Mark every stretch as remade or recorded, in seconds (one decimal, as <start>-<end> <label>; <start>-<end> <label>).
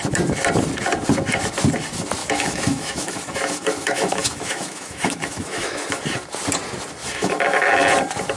0.0-2.2 recorded; 2.2-6.0 remade; 6.0-7.0 recorded; 7.0-7.7 remade; 7.7-8.4 recorded